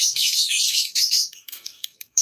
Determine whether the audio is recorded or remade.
remade